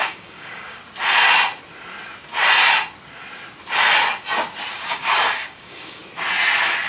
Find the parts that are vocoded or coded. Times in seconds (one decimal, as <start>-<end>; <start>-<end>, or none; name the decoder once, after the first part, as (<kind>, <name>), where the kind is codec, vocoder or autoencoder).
0.0-0.8 (codec, DAC); 4.7-6.0